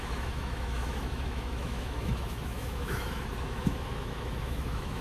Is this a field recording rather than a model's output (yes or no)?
no